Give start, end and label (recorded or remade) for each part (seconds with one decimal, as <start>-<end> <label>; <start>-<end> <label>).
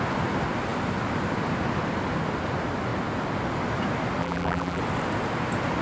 0.0-4.2 recorded; 4.2-4.8 remade; 4.8-5.8 recorded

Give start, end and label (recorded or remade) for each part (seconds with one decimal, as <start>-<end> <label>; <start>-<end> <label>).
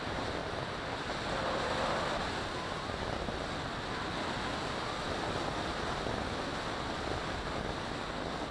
0.0-8.5 recorded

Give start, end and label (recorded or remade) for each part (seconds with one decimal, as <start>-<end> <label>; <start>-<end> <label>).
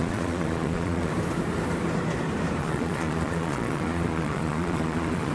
0.0-1.1 remade; 1.1-2.6 recorded; 2.6-5.3 remade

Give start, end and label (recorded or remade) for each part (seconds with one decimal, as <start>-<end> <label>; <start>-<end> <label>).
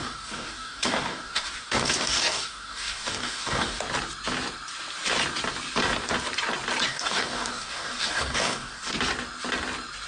0.0-3.8 remade; 3.8-6.9 recorded; 6.9-8.9 remade; 8.9-10.1 recorded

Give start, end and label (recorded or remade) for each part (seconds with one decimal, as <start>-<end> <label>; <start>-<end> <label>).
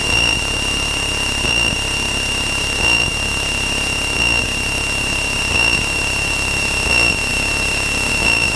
0.0-8.6 recorded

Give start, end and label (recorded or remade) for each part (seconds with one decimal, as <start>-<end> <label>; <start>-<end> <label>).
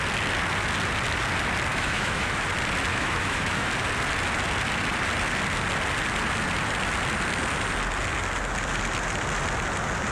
0.0-1.7 recorded; 1.7-2.4 remade; 2.4-2.9 recorded; 2.9-3.7 remade; 3.7-10.1 recorded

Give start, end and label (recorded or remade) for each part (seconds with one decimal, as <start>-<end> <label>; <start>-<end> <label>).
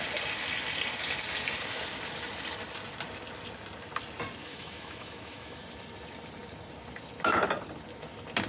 0.0-4.4 recorded; 4.4-5.6 remade; 5.6-8.5 recorded